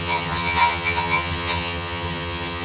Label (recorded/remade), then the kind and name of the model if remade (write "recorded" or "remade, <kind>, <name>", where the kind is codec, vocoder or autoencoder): remade, vocoder, HiFi-GAN